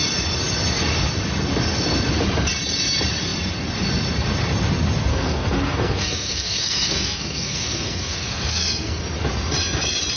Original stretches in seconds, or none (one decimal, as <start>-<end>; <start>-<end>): 0.0-5.1; 9.0-10.2